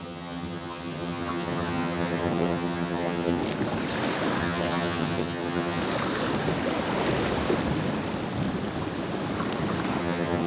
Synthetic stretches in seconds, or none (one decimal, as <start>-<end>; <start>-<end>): 0.0-3.4; 4.4-5.8; 10.0-10.5